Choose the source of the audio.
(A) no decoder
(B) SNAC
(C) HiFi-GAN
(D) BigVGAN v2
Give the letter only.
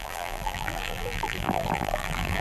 D